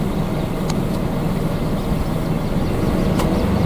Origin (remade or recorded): recorded